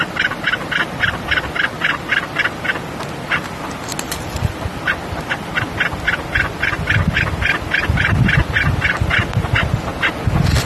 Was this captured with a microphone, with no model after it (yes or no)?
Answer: yes